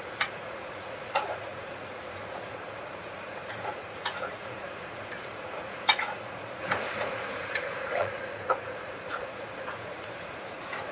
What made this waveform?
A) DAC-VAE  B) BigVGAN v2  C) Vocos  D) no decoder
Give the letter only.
C